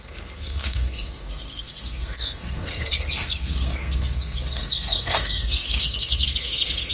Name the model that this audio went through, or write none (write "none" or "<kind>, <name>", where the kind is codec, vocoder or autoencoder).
codec, SNAC